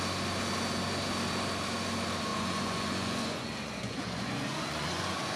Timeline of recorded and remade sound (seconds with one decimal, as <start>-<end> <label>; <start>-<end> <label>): 0.0-2.3 recorded; 2.3-5.4 remade